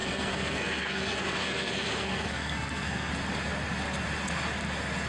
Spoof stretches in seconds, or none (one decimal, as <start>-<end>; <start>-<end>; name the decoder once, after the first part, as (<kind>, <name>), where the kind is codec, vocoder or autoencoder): 0.0-3.1 (codec, SNAC)